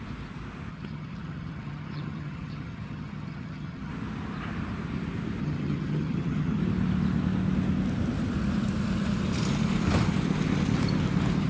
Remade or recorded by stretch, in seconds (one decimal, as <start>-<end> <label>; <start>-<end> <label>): 0.0-0.7 recorded; 0.7-3.9 remade; 3.9-5.4 recorded; 5.4-6.6 remade; 6.6-11.5 recorded